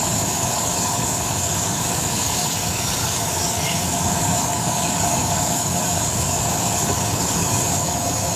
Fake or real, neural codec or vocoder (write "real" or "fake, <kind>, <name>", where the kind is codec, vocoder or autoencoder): fake, codec, DAC